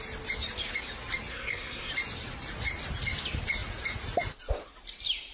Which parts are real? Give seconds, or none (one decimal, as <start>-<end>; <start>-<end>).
0.0-1.3; 1.9-5.3